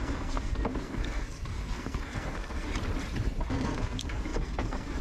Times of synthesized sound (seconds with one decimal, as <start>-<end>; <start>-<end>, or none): 0.0-2.7; 3.5-5.0